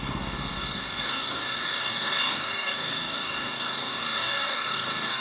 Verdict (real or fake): fake